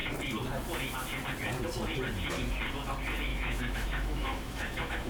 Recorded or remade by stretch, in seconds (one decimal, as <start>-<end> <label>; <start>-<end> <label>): 0.0-3.3 recorded; 3.3-5.1 remade